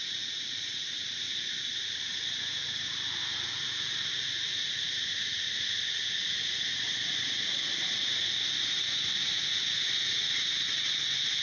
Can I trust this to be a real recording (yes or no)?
no